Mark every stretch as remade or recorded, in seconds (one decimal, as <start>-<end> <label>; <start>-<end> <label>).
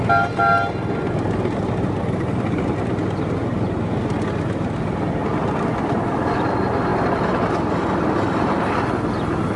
0.0-9.6 recorded